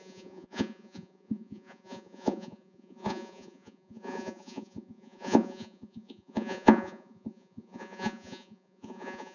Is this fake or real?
fake